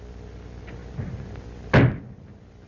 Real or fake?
real